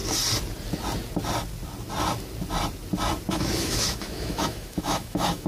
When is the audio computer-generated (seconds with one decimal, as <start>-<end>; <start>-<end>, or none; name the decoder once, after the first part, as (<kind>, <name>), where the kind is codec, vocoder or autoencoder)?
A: 3.3-5.5 (autoencoder, DAC-VAE)